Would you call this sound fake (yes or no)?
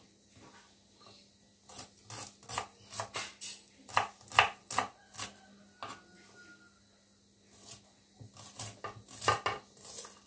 no